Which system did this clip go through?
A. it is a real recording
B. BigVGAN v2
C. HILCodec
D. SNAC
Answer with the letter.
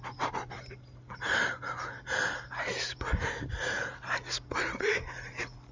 A